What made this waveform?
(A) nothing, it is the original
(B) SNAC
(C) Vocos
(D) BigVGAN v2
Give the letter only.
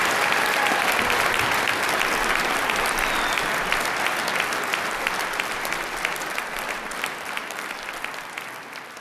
A